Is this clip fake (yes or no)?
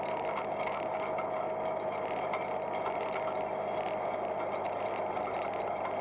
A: no